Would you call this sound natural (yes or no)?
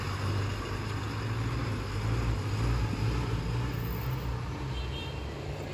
yes